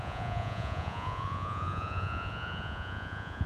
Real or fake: fake